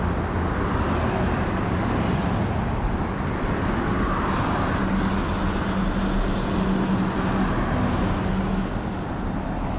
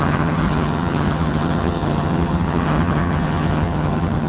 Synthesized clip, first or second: second